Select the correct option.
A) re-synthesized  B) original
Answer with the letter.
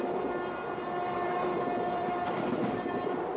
A